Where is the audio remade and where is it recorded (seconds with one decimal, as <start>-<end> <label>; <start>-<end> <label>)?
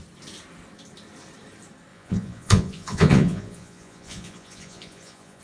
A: 0.0-1.9 recorded; 1.9-5.4 remade